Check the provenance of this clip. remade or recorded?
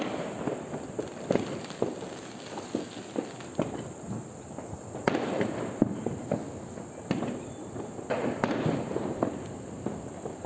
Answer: recorded